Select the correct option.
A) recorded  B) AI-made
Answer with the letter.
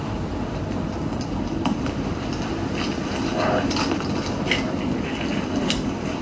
A